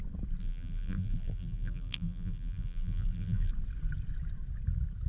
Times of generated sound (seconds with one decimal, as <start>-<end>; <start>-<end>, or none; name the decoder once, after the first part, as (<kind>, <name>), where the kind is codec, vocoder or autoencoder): 0.4-3.5 (vocoder, BigVGAN v2)